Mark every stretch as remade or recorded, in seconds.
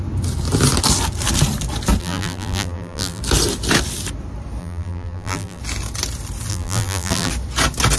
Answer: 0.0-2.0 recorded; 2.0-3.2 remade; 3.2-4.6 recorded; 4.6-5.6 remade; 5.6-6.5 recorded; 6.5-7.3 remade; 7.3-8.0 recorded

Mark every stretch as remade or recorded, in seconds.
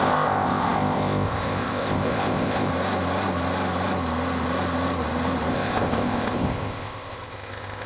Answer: 0.0-2.7 remade; 2.7-5.5 recorded; 5.5-7.9 remade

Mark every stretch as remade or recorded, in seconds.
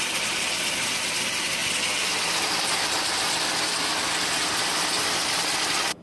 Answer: 0.0-6.0 recorded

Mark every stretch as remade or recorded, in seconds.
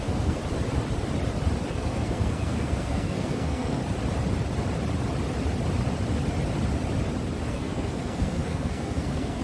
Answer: 0.0-0.4 remade; 0.4-1.7 recorded; 1.7-3.8 remade; 3.8-7.5 recorded; 7.5-9.4 remade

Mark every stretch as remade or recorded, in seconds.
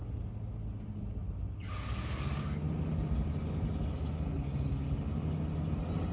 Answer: 0.0-6.1 recorded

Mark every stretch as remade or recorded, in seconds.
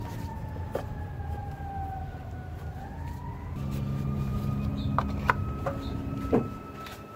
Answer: 0.0-4.3 recorded; 4.3-5.6 remade; 5.6-7.2 recorded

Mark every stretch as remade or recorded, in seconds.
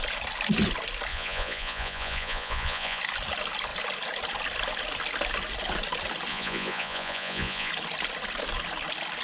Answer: 0.0-1.1 recorded; 1.1-3.0 remade; 3.0-6.3 recorded; 6.3-7.7 remade; 7.7-9.2 recorded